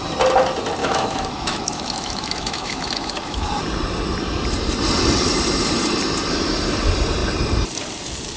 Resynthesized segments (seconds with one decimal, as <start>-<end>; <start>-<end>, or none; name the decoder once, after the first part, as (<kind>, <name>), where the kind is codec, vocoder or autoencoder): 0.8-3.5 (autoencoder, DAC-VAE)